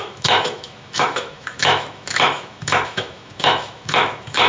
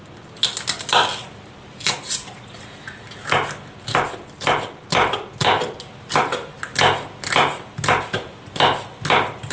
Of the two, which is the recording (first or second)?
second